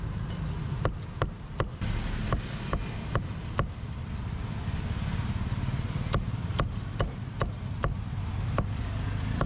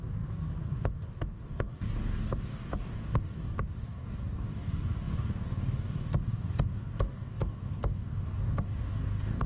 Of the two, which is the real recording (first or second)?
first